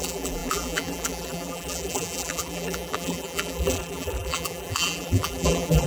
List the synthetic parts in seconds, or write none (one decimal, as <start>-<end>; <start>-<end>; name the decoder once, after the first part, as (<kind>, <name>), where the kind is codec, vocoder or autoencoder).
0.0-5.9 (vocoder, BigVGAN v2)